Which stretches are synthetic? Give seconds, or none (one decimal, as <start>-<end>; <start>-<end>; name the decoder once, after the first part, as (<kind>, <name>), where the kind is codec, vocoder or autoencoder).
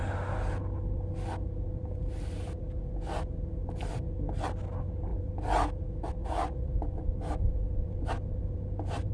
none